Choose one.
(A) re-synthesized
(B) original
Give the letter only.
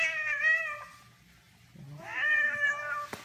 B